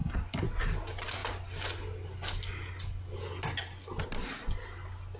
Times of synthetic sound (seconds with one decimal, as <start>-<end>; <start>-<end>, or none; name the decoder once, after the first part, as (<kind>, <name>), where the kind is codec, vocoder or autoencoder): none